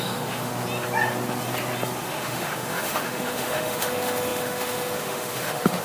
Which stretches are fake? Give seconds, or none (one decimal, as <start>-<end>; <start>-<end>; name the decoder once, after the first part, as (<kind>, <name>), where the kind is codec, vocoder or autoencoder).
0.0-0.5 (autoencoder, DAC-VAE); 2.0-5.8